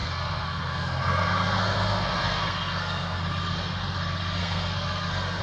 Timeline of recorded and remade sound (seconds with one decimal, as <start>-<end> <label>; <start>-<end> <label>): 0.0-3.2 remade; 3.2-4.4 recorded; 4.4-5.4 remade